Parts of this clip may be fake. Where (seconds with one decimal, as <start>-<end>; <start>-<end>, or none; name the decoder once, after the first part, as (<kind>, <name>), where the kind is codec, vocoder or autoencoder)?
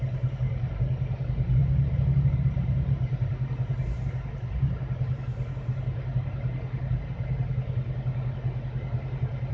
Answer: none